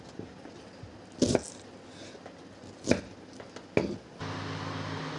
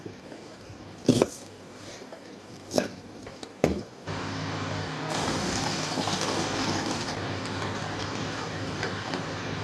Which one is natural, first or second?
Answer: first